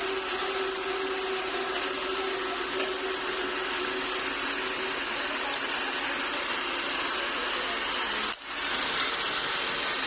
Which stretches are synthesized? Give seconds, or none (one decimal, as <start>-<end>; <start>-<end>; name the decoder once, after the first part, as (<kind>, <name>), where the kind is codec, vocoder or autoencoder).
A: none

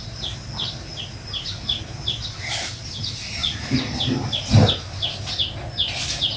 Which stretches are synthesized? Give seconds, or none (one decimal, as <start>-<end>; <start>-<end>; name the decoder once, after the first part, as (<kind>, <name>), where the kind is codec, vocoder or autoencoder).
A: none

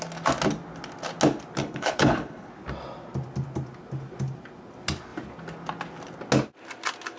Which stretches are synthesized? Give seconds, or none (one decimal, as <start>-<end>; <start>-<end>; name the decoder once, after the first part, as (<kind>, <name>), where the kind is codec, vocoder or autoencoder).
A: 1.6-2.5 (codec, HILCodec)

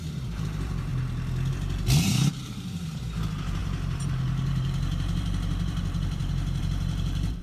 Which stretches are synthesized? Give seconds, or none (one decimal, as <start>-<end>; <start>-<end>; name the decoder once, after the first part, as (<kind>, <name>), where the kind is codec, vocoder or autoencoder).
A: 0.0-0.9 (vocoder, BigVGAN v2); 1.5-7.4

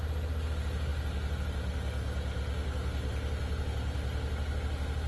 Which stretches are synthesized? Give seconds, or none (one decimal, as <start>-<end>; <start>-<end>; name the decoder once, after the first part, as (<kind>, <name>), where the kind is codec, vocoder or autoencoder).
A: none

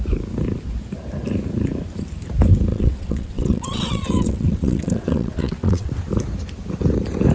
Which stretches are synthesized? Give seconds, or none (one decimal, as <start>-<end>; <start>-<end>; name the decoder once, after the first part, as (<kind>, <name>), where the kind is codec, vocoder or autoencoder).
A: 2.7-5.9 (vocoder, WaveNeXt)

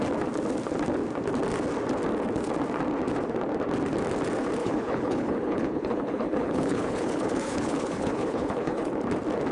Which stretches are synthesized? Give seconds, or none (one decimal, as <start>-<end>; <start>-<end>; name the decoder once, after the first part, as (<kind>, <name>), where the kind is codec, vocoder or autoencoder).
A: 4.6-8.9 (codec, HILCodec)

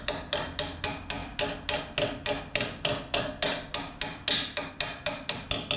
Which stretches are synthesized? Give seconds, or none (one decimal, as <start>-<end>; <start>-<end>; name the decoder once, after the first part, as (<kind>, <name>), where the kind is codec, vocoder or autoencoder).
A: none